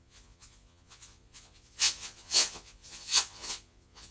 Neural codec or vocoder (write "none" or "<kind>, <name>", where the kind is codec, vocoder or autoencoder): vocoder, Vocos